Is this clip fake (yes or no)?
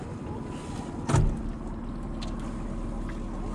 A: no